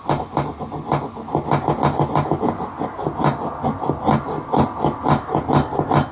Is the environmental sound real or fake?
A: real